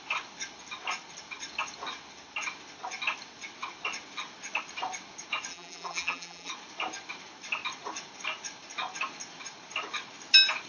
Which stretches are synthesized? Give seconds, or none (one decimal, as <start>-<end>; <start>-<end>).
5.5-6.5